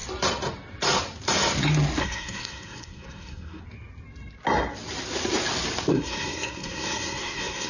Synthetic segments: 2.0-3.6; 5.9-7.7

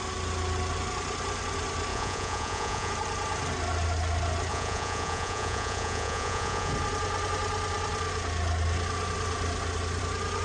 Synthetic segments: 1.9-2.9; 4.5-6.7

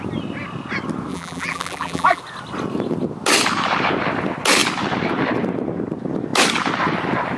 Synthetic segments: 1.1-2.2

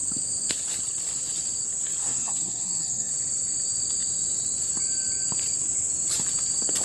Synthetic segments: 2.0-3.1

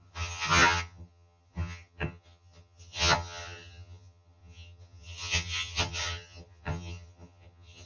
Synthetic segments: 0.0-7.9